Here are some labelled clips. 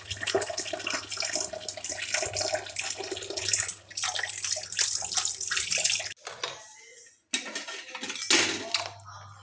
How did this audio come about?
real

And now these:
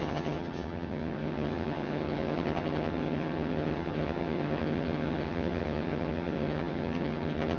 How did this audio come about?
fake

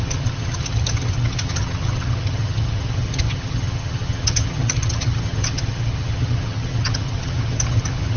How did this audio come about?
fake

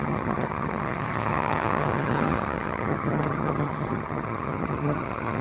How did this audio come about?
fake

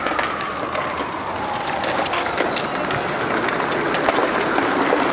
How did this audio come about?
real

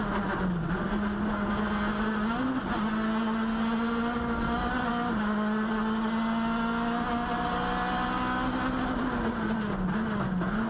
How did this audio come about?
real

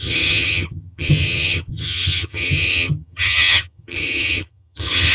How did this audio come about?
fake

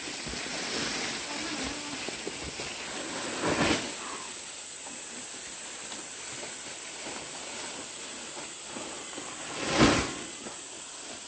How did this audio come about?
real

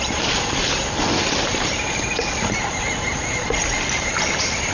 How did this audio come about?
real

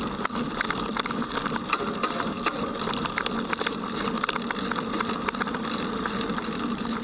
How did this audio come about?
real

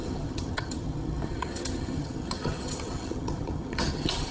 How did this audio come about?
fake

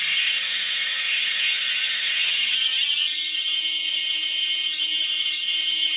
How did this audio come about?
fake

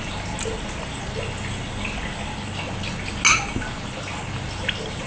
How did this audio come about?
real